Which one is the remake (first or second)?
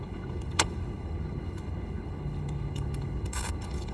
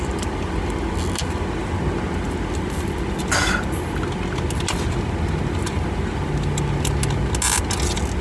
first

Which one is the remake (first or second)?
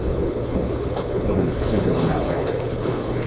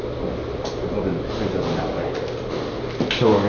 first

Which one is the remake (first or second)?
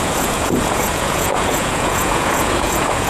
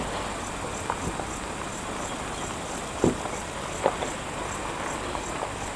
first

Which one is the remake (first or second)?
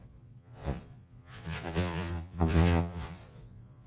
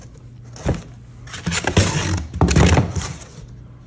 first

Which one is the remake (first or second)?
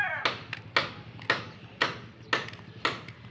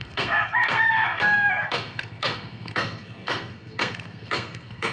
second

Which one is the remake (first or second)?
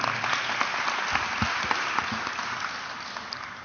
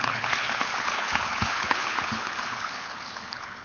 second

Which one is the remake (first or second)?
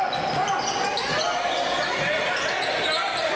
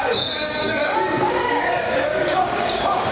second